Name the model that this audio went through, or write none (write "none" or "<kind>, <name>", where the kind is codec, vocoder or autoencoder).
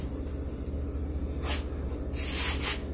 none